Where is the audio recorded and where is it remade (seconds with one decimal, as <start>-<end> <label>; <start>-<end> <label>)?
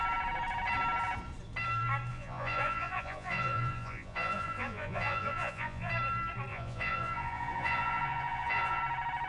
0.0-2.1 recorded; 2.1-5.9 remade; 5.9-6.5 recorded; 6.5-8.8 remade; 8.8-9.3 recorded